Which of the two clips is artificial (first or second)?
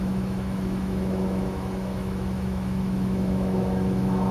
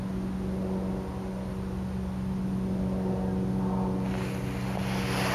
first